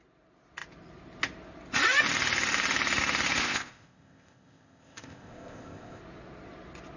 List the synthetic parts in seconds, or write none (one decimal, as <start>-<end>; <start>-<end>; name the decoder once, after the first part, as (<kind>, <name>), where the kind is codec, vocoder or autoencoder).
3.4-6.0 (codec, ZipCodec)